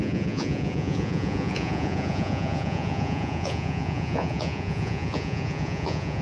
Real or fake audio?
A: fake